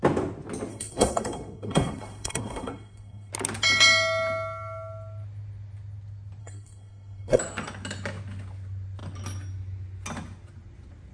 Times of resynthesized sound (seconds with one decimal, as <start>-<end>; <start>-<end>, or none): 0.7-3.3; 6.4-7.4